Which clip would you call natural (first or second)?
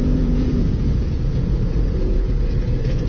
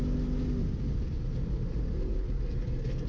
second